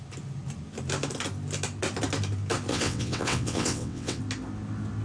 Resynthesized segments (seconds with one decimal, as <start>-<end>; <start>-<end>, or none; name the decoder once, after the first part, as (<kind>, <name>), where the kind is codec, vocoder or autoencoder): 2.7-4.2 (vocoder, WaveNeXt)

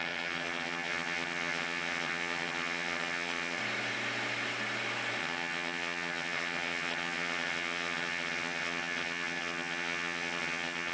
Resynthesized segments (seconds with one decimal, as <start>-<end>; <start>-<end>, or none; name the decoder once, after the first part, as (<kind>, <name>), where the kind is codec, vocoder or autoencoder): 0.0-3.6 (vocoder, HiFi-GAN); 5.2-10.9

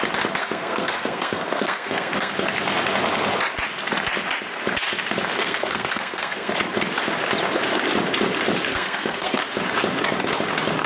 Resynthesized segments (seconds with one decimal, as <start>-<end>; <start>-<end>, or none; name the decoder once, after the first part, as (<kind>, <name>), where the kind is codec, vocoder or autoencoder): 0.4-2.3 (codec, SNAC); 5.4-6.5; 8.7-9.4